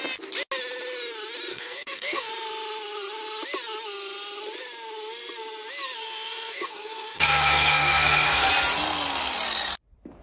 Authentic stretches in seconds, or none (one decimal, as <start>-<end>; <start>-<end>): 0.0-1.5; 2.3-6.0; 8.5-10.2